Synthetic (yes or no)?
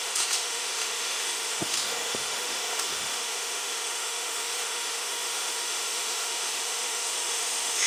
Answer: yes